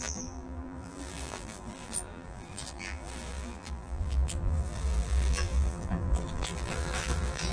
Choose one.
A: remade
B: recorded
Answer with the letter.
A